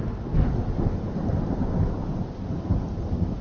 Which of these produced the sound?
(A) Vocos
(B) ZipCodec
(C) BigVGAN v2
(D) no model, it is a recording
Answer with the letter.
D